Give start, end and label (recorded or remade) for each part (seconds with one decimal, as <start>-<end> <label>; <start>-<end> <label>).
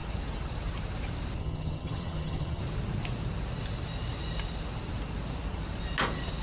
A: 0.0-1.4 recorded; 1.4-2.6 remade; 2.6-6.4 recorded